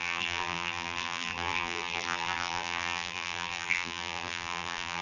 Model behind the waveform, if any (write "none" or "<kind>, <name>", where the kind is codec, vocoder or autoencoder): vocoder, BigVGAN v2